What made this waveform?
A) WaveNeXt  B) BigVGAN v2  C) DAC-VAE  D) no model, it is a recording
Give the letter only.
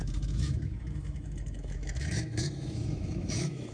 C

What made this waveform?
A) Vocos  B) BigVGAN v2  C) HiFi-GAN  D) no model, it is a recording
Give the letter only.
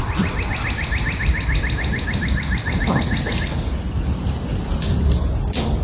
D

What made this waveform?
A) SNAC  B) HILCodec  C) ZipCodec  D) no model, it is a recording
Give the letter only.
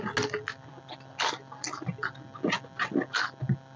D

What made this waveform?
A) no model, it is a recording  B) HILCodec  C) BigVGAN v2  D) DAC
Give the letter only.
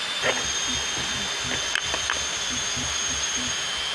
A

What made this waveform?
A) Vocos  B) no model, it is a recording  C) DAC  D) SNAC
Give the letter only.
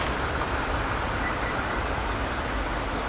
B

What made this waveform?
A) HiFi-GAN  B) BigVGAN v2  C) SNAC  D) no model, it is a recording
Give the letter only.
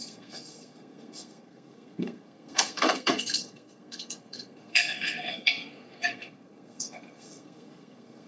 C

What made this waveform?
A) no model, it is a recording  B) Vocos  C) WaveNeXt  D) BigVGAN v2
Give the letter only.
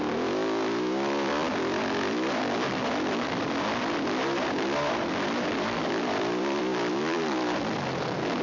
D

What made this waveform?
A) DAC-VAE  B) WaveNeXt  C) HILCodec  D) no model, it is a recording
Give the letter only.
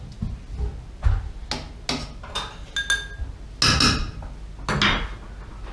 D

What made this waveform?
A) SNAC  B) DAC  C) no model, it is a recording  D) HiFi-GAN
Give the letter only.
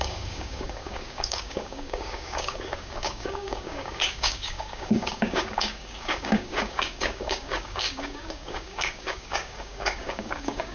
B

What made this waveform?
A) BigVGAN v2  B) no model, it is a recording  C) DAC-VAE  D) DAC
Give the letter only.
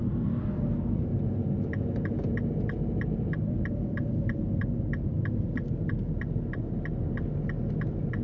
B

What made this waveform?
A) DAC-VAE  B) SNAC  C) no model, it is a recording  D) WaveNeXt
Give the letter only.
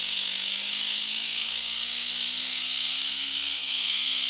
B